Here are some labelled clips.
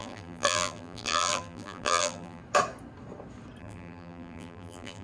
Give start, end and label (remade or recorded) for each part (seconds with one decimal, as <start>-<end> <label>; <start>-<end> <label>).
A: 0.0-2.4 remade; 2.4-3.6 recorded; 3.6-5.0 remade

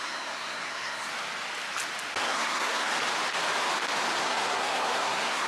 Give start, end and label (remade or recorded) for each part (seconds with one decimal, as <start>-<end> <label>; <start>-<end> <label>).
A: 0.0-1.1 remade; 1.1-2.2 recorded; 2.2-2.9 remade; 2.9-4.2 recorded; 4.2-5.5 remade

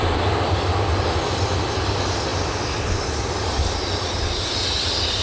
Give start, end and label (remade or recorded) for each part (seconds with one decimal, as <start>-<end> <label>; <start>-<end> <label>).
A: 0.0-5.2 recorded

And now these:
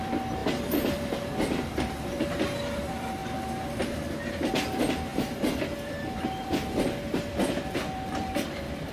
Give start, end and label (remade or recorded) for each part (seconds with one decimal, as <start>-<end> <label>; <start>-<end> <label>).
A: 0.0-3.2 remade; 3.2-4.5 recorded; 4.5-8.9 remade

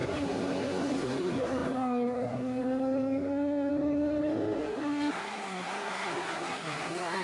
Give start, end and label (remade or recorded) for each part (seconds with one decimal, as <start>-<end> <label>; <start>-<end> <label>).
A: 0.0-7.2 remade

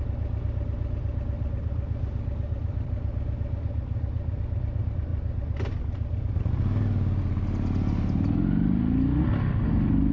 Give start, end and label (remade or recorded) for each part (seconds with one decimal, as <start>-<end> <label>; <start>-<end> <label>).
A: 0.0-10.1 recorded

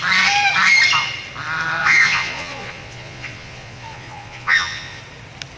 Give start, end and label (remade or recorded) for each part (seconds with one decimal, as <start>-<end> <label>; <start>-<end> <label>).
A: 0.0-1.8 recorded; 1.8-5.0 remade; 5.0-5.6 recorded

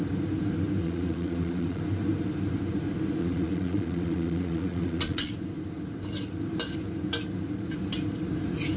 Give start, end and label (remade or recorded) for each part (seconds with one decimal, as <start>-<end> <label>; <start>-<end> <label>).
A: 0.0-0.8 recorded; 0.8-1.8 remade; 1.8-3.2 recorded; 3.2-5.3 remade; 5.3-8.8 recorded